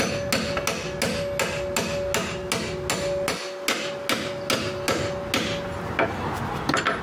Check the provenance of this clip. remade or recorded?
recorded